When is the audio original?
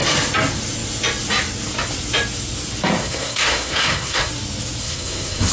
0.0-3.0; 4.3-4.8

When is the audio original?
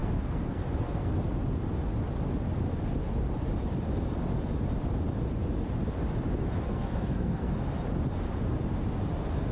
1.1-6.7; 7.5-9.5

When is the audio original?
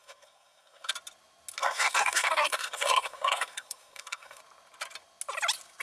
0.9-1.6; 4.4-5.8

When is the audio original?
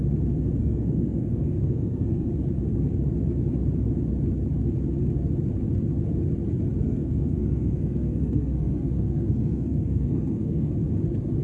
0.0-0.6; 2.3-6.8; 10.7-11.4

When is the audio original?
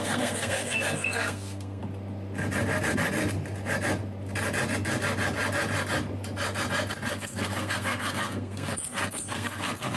1.8-7.1